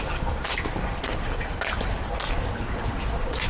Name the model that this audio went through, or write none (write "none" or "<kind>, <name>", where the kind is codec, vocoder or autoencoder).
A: none